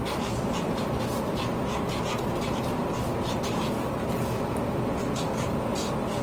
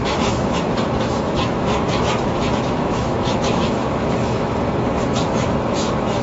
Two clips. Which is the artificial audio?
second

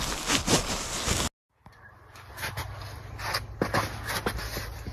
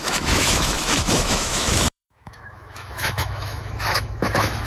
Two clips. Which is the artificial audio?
second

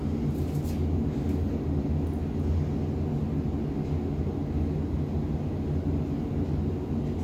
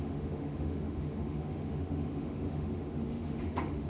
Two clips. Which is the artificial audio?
second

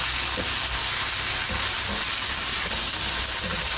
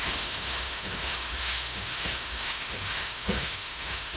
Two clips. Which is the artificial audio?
second